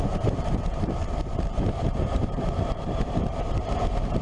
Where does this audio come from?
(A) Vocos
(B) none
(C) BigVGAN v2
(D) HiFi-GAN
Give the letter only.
C